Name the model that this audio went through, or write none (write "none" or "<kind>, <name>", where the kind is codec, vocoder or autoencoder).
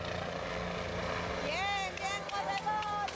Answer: none